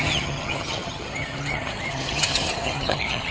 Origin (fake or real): fake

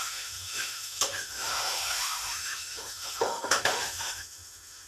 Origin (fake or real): fake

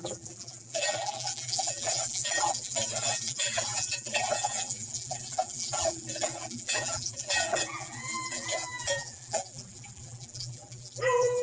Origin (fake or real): fake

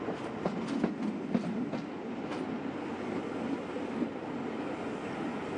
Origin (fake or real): real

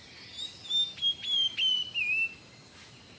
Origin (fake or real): real